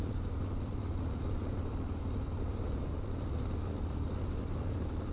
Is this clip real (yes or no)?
no